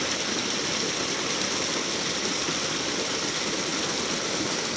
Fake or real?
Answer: real